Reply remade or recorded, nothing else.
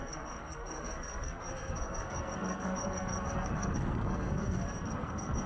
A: remade